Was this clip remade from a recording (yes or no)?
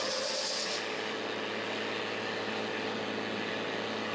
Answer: no